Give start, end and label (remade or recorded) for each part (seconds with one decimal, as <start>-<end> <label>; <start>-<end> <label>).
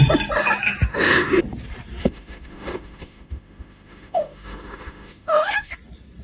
0.0-0.9 recorded; 0.9-1.4 remade; 1.4-2.0 recorded; 2.0-5.7 remade; 5.7-6.2 recorded